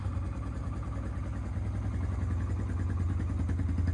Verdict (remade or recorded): recorded